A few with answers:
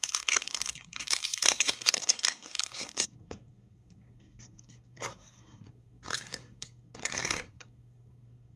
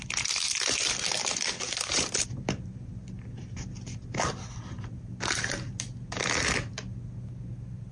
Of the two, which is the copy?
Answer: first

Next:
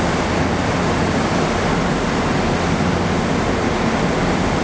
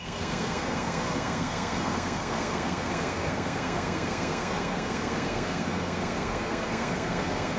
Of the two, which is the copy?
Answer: second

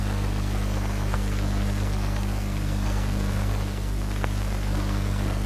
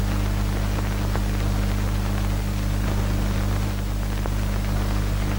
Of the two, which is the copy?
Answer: first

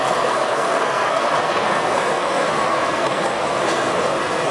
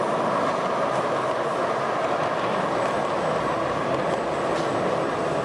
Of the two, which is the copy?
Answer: first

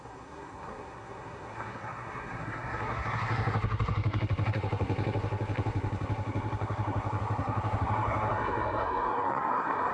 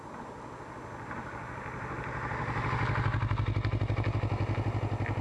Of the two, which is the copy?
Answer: first